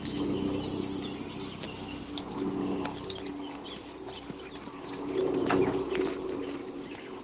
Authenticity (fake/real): real